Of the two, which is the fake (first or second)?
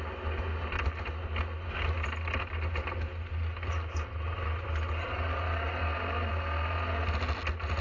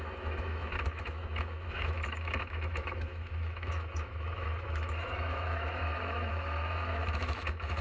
second